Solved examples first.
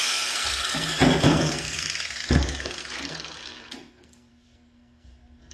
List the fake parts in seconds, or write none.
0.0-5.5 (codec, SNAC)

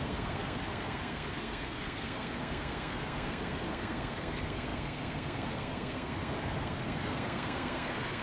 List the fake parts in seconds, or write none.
0.0-8.2 (codec, SNAC)

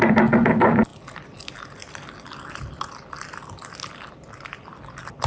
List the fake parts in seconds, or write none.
none